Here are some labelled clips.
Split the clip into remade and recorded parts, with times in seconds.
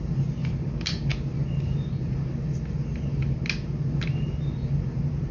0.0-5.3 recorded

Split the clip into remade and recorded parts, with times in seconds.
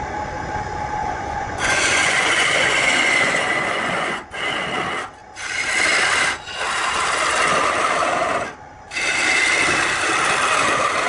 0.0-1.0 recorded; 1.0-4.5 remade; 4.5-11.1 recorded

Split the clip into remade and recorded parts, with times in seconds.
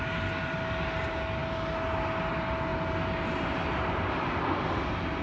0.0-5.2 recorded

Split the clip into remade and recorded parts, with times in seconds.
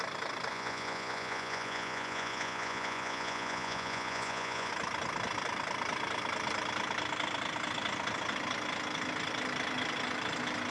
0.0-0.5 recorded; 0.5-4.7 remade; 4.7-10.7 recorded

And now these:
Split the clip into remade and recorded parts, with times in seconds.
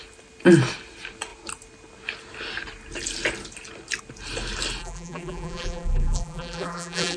0.0-4.8 recorded; 4.8-7.2 remade